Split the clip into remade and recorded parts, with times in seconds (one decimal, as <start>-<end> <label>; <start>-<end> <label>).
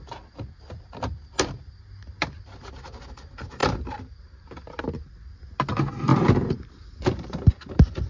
0.0-6.1 recorded; 6.1-7.5 remade; 7.5-8.1 recorded